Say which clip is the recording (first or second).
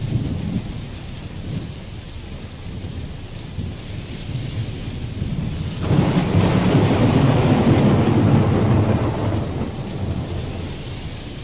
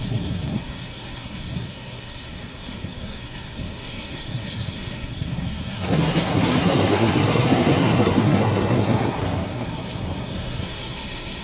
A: first